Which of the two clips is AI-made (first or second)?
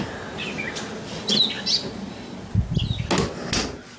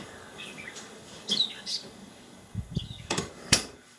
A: second